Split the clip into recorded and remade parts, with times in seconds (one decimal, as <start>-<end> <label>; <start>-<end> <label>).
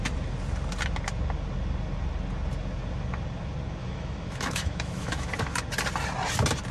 0.0-3.8 recorded; 3.8-5.3 remade; 5.3-6.7 recorded